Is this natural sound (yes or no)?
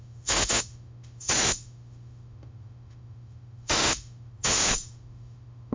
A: no